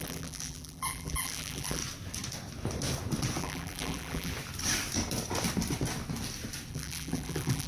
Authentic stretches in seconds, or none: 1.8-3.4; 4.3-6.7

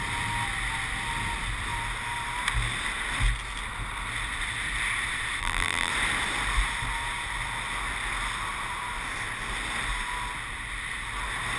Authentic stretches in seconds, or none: 0.0-5.4; 5.9-11.6

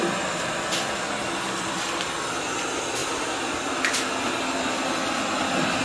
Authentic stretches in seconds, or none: 0.0-3.0; 3.7-5.8

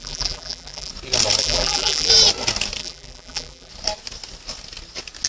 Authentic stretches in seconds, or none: 0.9-1.4; 2.1-2.8; 3.7-5.3

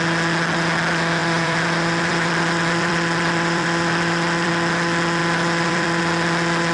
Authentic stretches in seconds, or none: 0.0-1.2; 4.5-5.2; 6.0-6.7

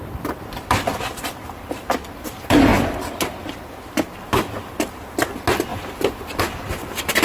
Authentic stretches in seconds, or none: 0.0-5.7; 6.4-7.2

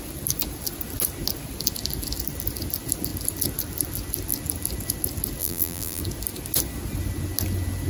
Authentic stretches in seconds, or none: 0.0-5.4; 6.0-7.9

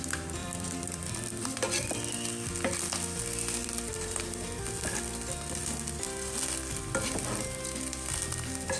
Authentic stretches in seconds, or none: 0.0-0.4; 1.9-3.6; 5.1-8.8